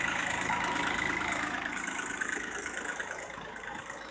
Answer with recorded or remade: remade